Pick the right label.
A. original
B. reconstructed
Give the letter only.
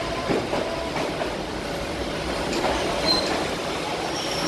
B